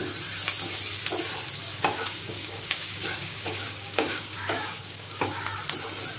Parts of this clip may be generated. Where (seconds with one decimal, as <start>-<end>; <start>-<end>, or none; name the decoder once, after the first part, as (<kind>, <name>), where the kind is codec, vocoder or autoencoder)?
1.7-5.4 (codec, DAC)